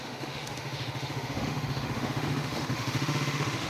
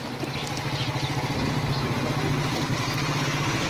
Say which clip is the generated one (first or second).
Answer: first